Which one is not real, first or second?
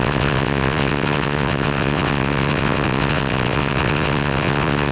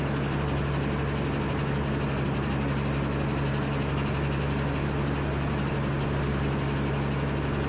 first